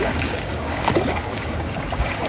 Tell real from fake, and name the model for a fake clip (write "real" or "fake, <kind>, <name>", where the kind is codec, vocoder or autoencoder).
fake, codec, DAC